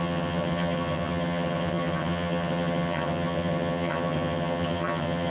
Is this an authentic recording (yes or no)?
no